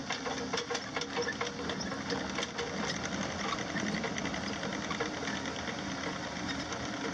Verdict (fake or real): real